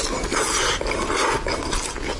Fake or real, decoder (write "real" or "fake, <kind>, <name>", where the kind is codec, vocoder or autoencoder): real